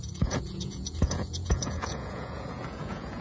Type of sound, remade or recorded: remade